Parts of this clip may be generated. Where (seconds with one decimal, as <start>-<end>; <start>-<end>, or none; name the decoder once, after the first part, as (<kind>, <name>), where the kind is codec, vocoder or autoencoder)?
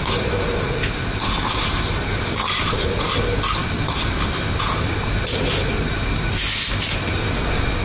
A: none